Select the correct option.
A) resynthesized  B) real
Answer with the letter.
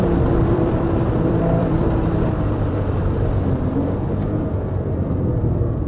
A